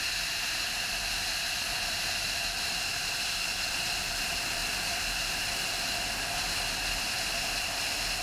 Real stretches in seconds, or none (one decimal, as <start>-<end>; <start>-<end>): 0.0-8.2